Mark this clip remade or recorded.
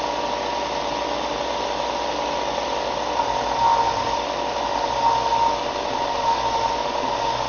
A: recorded